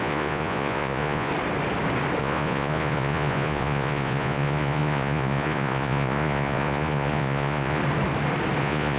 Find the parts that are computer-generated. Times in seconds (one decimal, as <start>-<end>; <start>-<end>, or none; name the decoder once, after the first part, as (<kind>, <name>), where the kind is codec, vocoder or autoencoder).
0.0-1.3 (vocoder, Vocos); 2.2-7.8; 8.6-9.0